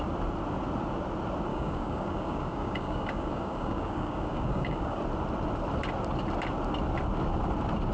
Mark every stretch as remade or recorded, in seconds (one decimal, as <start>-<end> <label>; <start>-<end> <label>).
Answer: 0.0-1.5 recorded; 1.5-5.0 remade; 5.0-7.9 recorded

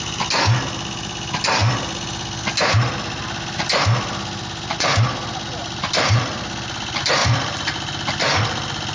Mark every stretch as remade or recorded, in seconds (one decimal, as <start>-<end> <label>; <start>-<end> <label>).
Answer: 0.0-5.6 recorded; 5.6-6.3 remade; 6.3-7.2 recorded; 7.2-7.7 remade; 7.7-8.9 recorded